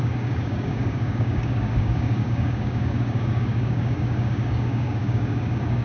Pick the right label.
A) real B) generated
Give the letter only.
B